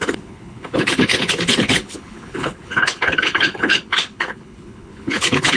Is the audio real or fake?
fake